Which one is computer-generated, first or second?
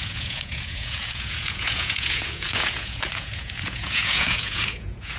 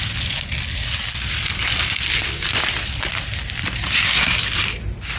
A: first